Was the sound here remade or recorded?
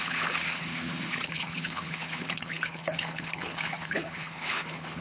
remade